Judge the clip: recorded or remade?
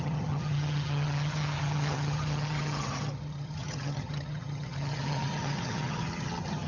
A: remade